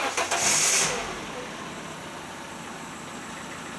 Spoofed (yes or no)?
no